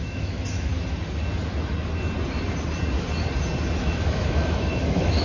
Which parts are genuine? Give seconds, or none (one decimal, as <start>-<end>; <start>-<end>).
0.7-3.8